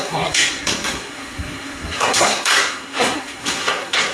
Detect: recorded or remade remade